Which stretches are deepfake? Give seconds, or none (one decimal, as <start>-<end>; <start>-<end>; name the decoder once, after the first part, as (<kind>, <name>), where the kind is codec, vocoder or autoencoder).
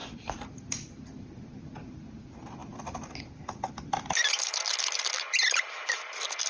0.0-6.5 (vocoder, BigVGAN v2)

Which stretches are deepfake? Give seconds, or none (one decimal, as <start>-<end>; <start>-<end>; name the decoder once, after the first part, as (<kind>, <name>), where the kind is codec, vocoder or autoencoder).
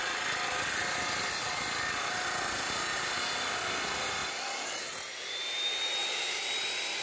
none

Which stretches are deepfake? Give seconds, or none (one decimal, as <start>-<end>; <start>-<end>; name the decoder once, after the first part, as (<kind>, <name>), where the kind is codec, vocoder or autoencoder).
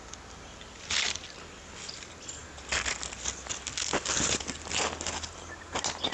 none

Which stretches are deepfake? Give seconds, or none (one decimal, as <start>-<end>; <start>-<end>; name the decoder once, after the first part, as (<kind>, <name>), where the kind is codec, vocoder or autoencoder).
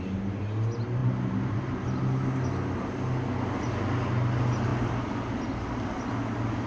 none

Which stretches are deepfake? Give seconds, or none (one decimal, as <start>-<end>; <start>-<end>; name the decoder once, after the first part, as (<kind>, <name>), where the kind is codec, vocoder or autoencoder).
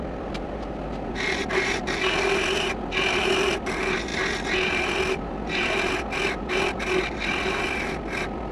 none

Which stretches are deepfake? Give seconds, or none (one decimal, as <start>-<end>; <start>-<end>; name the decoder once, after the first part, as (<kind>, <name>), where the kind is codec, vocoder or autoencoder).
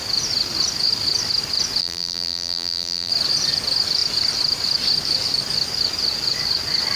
1.8-3.1 (vocoder, BigVGAN v2)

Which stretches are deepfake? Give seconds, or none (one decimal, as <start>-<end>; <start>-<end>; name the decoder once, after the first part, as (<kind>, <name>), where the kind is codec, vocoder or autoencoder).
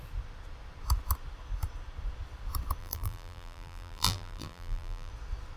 2.8-5.1 (vocoder, BigVGAN v2)